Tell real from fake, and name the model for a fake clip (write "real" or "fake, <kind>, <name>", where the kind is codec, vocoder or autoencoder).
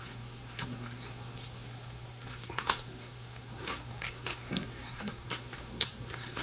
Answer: fake, codec, SNAC